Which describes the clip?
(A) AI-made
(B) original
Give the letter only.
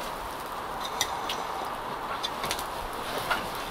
B